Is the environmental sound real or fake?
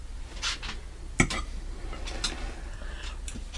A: real